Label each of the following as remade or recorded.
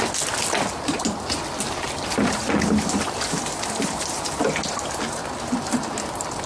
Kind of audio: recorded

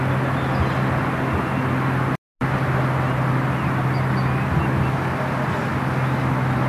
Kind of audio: recorded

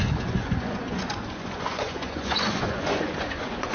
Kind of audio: remade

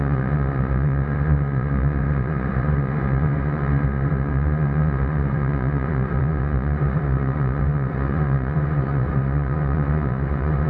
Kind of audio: remade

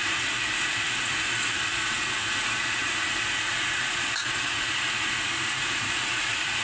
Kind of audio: remade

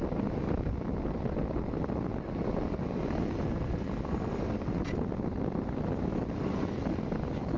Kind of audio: recorded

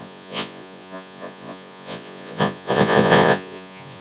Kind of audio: remade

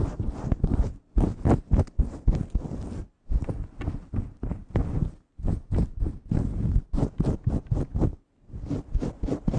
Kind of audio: recorded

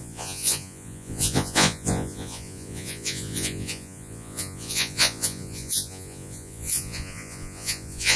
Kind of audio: remade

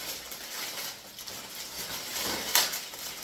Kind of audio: recorded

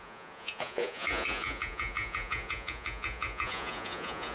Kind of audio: remade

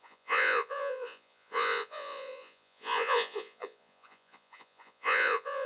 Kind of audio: remade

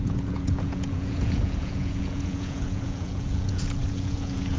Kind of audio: remade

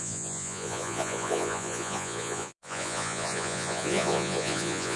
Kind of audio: remade